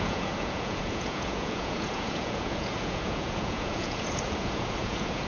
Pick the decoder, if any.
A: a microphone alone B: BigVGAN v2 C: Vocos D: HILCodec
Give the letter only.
C